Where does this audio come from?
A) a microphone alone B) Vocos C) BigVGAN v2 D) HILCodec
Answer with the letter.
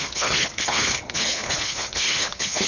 D